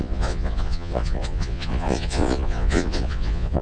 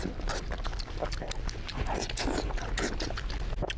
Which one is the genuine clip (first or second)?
second